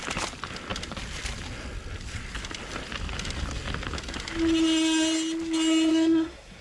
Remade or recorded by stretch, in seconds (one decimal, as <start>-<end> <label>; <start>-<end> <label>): 0.0-5.9 recorded; 5.9-6.6 remade